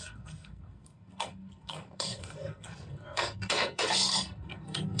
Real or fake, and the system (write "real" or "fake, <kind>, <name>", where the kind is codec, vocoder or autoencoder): fake, codec, SNAC